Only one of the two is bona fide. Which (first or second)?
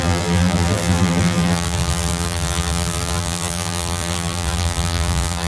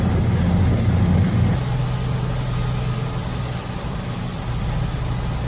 second